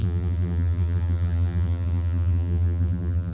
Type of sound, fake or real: fake